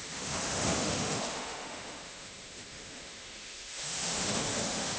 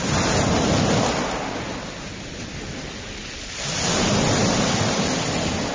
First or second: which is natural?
second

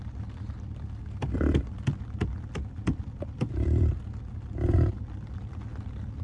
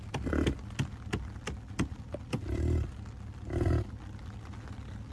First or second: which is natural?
second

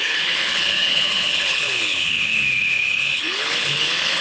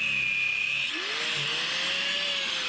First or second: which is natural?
second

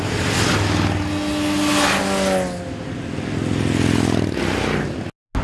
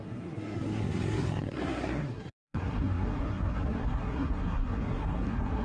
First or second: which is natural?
first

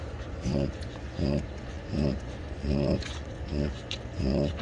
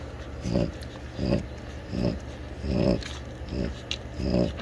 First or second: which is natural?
second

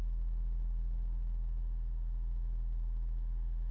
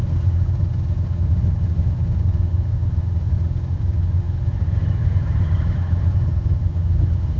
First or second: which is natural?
first